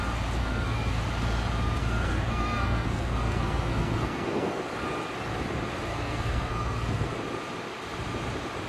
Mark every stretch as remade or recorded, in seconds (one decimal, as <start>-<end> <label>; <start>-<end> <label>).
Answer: 0.0-0.4 recorded; 0.4-1.0 remade; 1.0-1.8 recorded; 1.8-4.6 remade; 4.6-5.9 recorded; 5.9-7.1 remade; 7.1-8.7 recorded